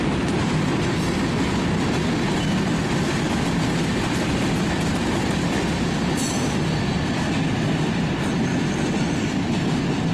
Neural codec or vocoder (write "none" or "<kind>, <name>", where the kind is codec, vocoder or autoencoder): none